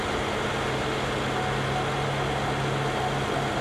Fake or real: real